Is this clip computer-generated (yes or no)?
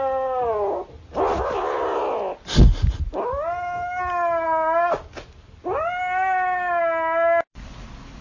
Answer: no